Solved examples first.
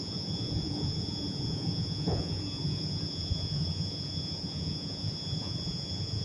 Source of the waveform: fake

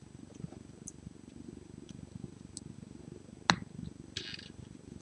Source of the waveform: real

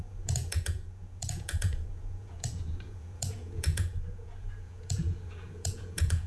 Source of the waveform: fake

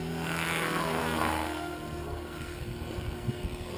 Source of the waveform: fake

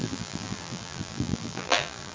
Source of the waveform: fake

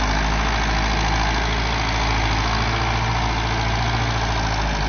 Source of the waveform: real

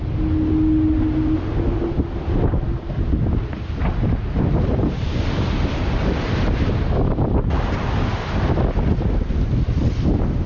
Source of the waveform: real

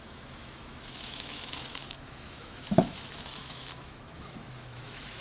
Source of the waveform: fake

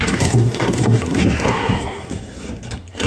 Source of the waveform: fake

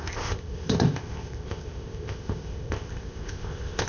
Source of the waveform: fake